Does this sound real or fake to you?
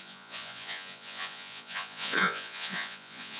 fake